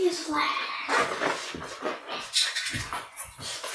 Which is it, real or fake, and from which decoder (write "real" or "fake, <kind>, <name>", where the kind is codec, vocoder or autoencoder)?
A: fake, vocoder, Vocos